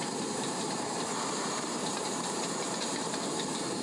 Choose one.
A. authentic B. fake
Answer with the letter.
B